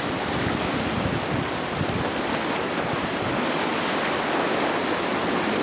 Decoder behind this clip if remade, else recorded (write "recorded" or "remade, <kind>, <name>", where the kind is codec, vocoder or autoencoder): recorded